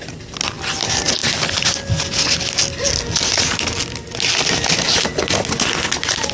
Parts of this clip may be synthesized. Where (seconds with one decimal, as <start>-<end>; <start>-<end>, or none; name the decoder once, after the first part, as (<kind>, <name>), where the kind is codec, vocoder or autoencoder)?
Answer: none